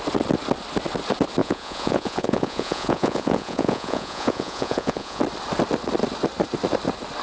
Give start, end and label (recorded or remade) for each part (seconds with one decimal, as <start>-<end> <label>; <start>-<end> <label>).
0.0-1.4 recorded; 1.4-5.2 remade; 5.2-7.2 recorded